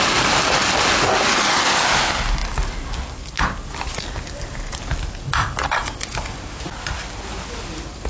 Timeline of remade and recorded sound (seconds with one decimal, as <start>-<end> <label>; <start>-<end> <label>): 0.0-8.1 recorded

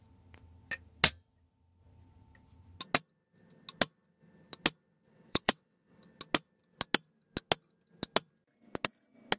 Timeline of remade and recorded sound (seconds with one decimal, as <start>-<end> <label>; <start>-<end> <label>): 0.0-5.1 recorded; 5.1-6.0 remade; 6.0-9.4 recorded

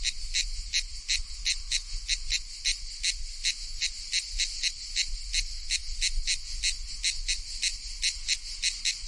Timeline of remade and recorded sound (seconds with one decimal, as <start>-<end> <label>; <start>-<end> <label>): 0.0-9.1 recorded

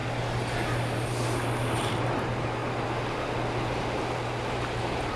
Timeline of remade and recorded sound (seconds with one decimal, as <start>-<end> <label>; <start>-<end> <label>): 0.0-1.7 recorded; 1.7-2.6 remade; 2.6-4.8 recorded; 4.8-5.2 remade

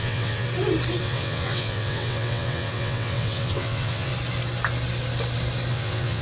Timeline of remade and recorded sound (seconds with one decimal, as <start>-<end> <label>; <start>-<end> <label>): 0.0-0.4 remade; 0.4-1.0 recorded; 1.0-4.1 remade; 4.1-5.7 recorded; 5.7-6.2 remade